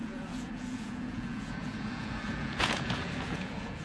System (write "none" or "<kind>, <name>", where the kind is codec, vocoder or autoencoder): vocoder, Vocos